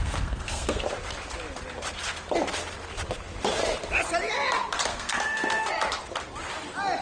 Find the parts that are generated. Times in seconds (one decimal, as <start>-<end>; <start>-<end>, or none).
0.0-0.8; 4.9-5.7